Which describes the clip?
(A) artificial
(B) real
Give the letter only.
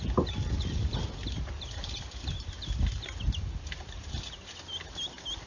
B